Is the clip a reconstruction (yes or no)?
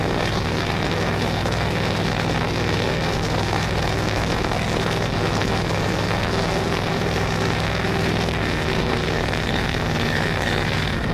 yes